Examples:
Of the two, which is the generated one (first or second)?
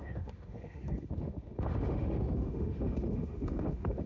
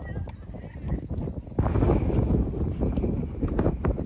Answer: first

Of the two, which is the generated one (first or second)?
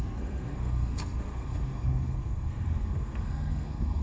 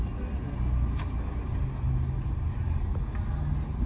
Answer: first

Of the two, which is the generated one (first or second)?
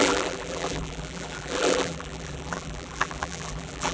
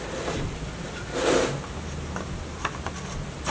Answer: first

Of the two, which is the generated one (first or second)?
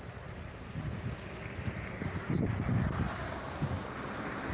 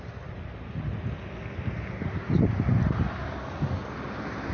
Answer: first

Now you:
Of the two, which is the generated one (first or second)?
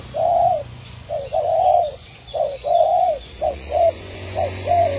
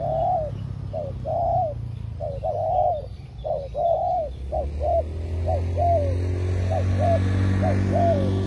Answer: first